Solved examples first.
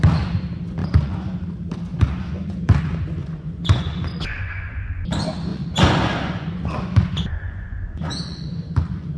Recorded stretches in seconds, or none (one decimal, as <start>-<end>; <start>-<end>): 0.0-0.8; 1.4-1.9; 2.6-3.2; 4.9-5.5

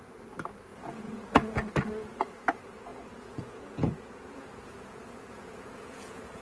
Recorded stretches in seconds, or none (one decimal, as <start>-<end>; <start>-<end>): 0.0-0.7; 1.7-2.9

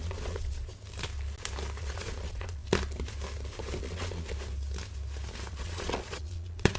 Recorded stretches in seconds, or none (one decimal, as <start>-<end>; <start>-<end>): 0.7-1.8; 2.6-3.8; 4.3-5.5

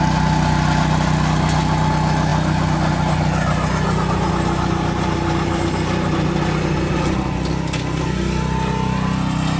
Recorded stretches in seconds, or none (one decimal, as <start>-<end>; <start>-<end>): 0.0-9.6

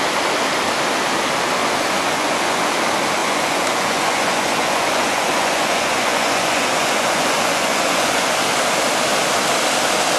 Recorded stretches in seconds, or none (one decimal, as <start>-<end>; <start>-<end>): 0.0-1.6; 2.7-3.2; 8.4-10.2

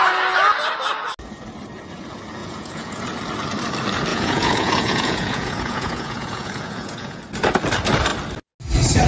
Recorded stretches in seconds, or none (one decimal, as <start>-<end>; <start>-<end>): 0.0-2.4; 3.0-4.1; 7.2-9.1

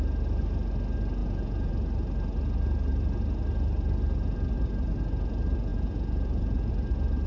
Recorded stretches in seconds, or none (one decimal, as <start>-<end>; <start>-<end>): 0.0-1.2; 1.7-5.7; 6.7-7.3

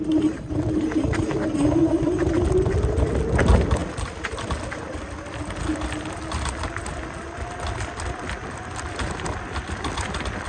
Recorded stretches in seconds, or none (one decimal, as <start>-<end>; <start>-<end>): 0.0-10.5